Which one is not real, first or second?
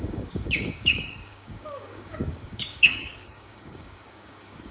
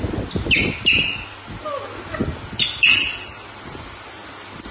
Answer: first